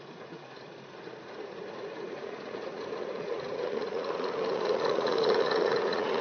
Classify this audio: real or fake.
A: fake